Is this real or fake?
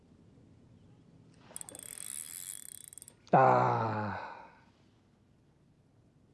real